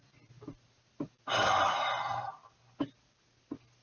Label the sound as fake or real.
real